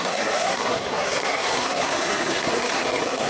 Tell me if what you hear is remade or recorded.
remade